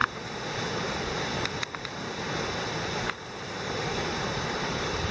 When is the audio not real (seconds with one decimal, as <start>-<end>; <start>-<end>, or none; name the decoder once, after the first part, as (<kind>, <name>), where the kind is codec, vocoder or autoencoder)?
3.1-5.1 (vocoder, BigVGAN v2)